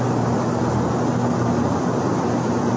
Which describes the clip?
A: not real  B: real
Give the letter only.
B